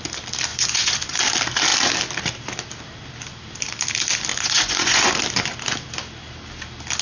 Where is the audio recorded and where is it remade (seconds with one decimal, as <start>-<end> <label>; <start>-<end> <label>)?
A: 0.0-0.5 recorded; 0.5-1.2 remade; 1.2-4.3 recorded; 4.3-5.1 remade; 5.1-7.0 recorded